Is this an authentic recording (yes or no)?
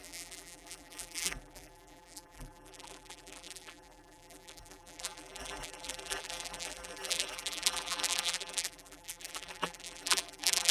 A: no